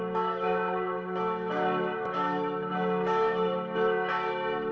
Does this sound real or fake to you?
fake